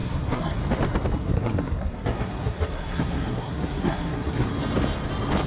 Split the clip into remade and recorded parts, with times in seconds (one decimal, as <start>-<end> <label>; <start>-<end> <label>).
0.0-0.6 remade; 0.6-1.2 recorded; 1.2-4.5 remade; 4.5-5.5 recorded